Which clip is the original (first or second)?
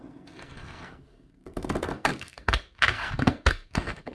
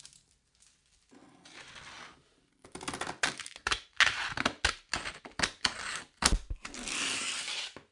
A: second